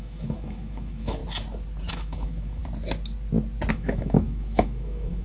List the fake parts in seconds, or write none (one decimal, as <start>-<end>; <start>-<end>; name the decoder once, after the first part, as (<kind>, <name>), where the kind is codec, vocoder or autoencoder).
0.0-1.2 (autoencoder, DAC-VAE); 1.9-2.6; 3.7-5.2